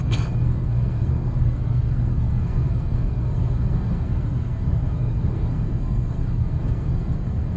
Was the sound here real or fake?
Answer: fake